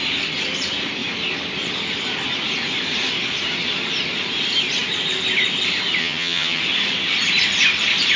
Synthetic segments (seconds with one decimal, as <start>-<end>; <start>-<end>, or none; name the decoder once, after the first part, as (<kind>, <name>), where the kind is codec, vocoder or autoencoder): 6.0-6.6 (vocoder, HiFi-GAN)